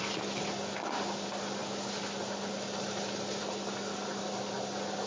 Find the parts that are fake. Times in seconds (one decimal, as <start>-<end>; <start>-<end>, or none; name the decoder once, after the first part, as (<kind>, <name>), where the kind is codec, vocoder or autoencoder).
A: none